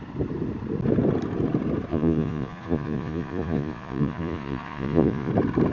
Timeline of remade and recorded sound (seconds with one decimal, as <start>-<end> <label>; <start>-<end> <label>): 0.0-1.9 recorded; 1.9-5.3 remade; 5.3-5.7 recorded